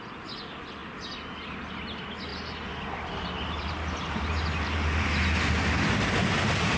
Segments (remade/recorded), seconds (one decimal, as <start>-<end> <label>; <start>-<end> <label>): 0.0-6.8 recorded